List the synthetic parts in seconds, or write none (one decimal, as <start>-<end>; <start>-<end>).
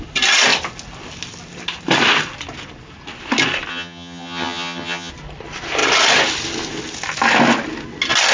3.7-5.1